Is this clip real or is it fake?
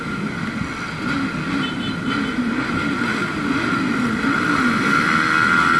real